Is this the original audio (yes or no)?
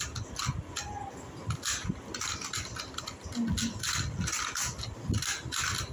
yes